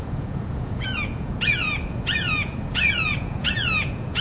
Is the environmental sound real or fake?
fake